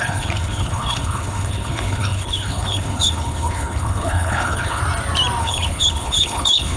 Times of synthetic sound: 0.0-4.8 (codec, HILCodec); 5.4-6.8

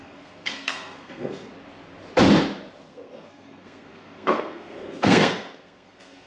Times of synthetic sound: 0.0-1.5 (codec, SNAC); 2.9-6.3

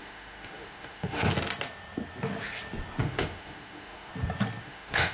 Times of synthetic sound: 0.0-1.3 (autoencoder, DAC-VAE); 3.0-4.1; 4.6-5.1

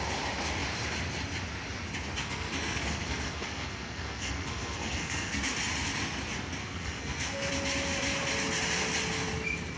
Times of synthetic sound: 2.2-5.4 (codec, SNAC); 6.6-7.5